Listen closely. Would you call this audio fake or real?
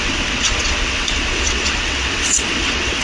fake